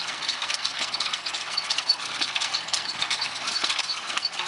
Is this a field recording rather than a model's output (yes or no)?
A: no